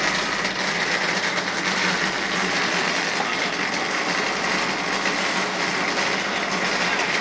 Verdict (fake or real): real